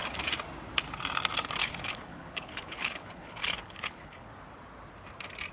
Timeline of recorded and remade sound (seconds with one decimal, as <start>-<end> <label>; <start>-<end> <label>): 0.0-1.6 recorded; 1.6-4.3 remade; 4.3-5.5 recorded